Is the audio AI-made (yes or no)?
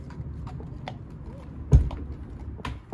no